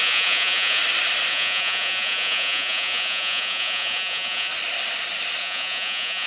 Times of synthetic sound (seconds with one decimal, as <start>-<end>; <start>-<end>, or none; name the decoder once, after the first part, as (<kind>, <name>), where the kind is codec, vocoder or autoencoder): 0.0-0.8 (vocoder, Vocos); 1.3-4.5; 5.4-6.3